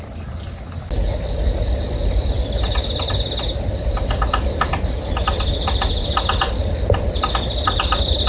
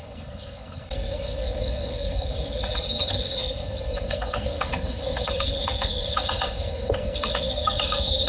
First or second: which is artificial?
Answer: second